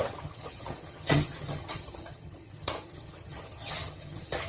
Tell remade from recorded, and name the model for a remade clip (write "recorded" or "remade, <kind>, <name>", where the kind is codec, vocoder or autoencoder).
remade, vocoder, HiFi-GAN